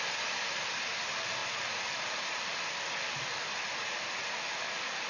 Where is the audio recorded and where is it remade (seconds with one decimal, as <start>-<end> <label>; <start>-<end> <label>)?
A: 0.0-1.4 recorded; 1.4-4.5 remade; 4.5-5.1 recorded